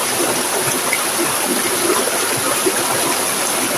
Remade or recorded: recorded